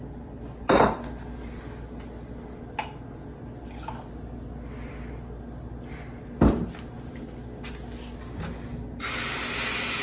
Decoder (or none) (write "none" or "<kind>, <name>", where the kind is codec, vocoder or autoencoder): none